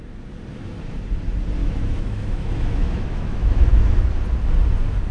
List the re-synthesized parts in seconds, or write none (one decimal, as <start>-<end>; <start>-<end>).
1.6-4.1